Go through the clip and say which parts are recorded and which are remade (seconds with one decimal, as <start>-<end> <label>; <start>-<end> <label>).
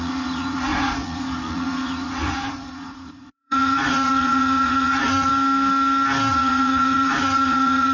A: 0.0-5.3 remade; 5.3-6.3 recorded; 6.3-7.9 remade